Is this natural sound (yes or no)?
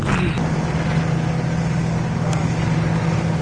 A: yes